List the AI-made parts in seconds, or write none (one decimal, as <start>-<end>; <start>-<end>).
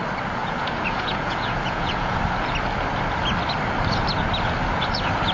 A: 0.4-2.2